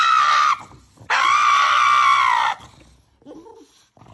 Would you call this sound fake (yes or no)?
no